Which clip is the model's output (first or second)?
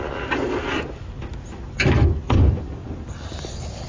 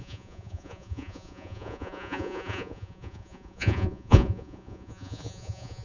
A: second